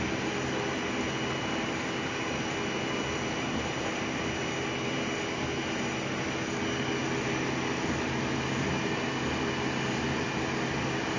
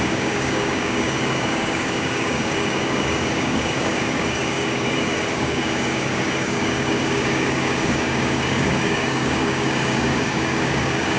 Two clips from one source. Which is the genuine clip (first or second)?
first